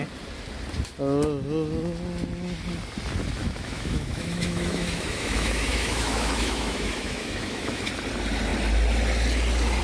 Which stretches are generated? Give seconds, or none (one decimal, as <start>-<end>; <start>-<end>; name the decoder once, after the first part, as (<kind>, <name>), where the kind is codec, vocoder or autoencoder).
3.4-7.9 (autoencoder, DAC-VAE)